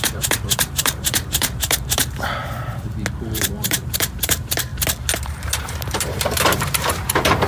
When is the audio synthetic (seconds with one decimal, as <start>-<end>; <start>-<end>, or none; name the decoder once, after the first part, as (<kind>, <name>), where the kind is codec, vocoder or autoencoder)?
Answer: 0.0-2.4 (vocoder, BigVGAN v2); 3.2-4.7; 5.2-7.5